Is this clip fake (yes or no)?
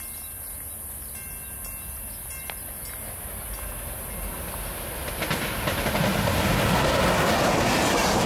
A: no